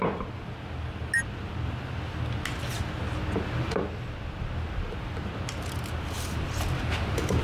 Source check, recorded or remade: recorded